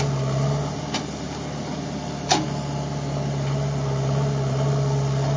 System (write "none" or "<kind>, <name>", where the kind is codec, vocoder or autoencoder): none